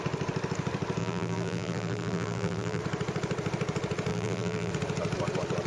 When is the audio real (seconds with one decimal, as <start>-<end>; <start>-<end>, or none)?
0.0-1.0; 2.8-4.1; 4.7-5.7